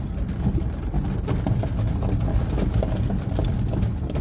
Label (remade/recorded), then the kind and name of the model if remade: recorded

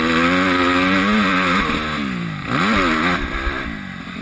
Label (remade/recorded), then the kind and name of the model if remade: recorded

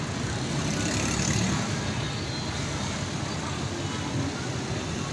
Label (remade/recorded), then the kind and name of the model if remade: recorded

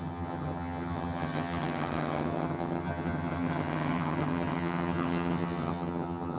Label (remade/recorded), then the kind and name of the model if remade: remade, vocoder, HiFi-GAN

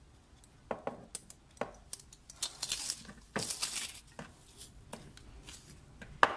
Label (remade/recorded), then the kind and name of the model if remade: recorded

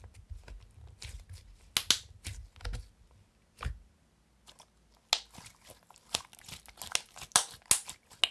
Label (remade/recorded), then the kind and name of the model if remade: recorded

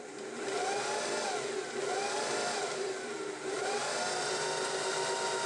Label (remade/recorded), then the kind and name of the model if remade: recorded